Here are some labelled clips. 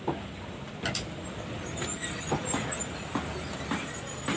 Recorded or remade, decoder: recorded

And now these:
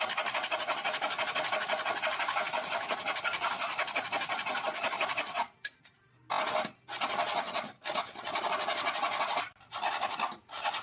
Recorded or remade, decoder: recorded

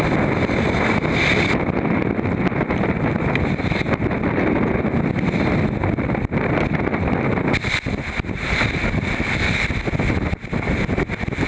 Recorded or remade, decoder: recorded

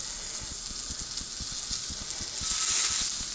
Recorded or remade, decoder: recorded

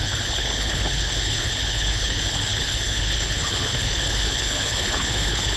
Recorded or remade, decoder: remade, codec, HILCodec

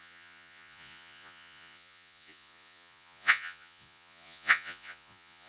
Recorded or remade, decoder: remade, vocoder, Vocos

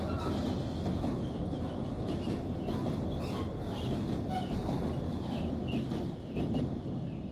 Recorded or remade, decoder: recorded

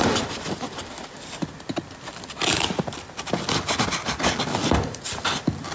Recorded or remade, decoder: recorded